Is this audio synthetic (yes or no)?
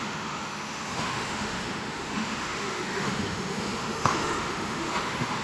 yes